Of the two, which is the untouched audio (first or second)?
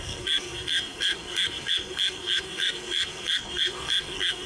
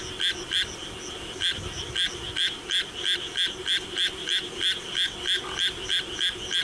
second